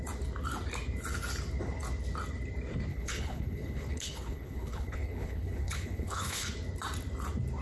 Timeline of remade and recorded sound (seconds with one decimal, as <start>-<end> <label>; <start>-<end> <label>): 0.0-2.9 recorded; 2.9-6.5 remade; 6.5-7.6 recorded